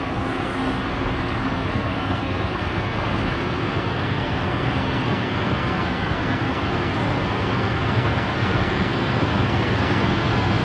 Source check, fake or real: fake